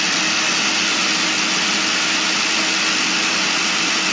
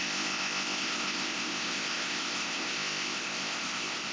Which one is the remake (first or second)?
second